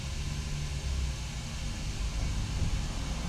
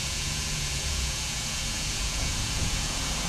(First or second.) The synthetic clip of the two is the second